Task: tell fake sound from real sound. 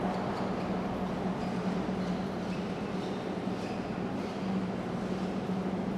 real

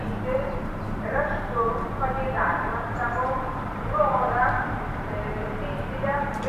fake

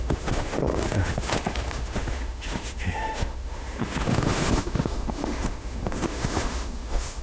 fake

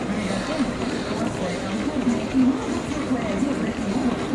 real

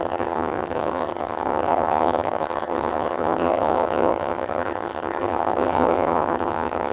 fake